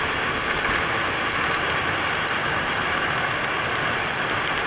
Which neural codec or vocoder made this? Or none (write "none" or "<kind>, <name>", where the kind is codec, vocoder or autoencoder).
none